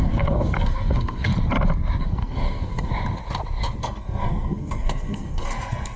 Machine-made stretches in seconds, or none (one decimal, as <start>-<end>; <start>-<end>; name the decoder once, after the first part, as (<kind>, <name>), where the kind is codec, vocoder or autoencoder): 0.0-1.3 (codec, SNAC); 2.0-2.9; 3.8-6.0